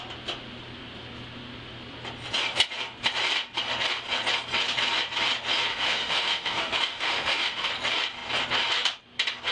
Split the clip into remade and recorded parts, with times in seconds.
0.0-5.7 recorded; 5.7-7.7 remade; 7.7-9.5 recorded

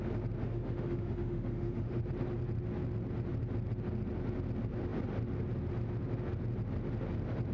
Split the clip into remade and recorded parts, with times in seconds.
0.0-0.4 recorded; 0.4-2.0 remade; 2.0-7.5 recorded

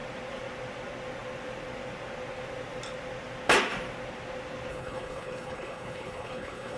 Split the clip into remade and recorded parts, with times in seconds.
0.0-4.7 recorded; 4.7-6.8 remade

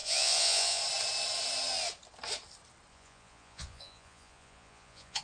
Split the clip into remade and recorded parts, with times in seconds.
0.0-0.8 remade; 0.8-2.9 recorded; 2.9-5.2 remade

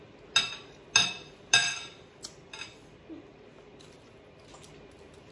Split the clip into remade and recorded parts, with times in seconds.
0.0-5.3 recorded

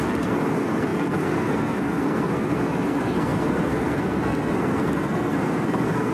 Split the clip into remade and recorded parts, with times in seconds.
0.0-6.1 remade

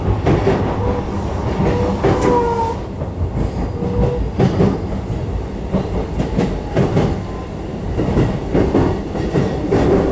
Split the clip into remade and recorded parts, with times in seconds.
0.0-10.1 recorded